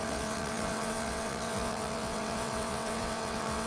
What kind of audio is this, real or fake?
fake